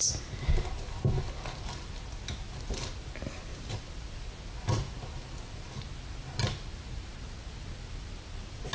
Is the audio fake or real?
real